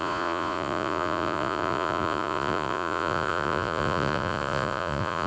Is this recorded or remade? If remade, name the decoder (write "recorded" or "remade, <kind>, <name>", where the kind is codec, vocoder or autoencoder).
remade, vocoder, Vocos